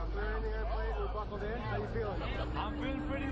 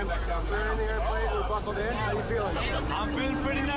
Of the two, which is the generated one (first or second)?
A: second